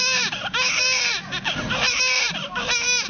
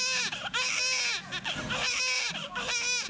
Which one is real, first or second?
second